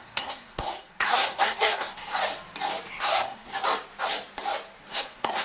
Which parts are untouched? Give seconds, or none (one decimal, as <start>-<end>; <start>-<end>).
2.0-2.9; 3.5-4.9